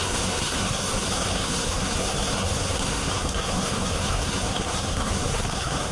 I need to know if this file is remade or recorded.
remade